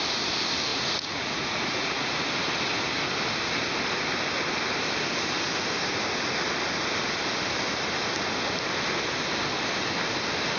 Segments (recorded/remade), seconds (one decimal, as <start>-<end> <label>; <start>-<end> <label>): 0.0-0.7 recorded; 0.7-2.2 remade; 2.2-10.6 recorded